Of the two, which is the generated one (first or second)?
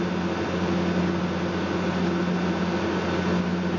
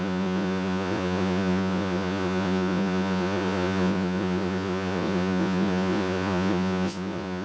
second